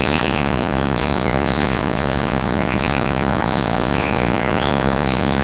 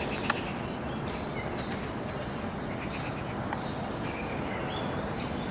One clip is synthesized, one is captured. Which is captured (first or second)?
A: second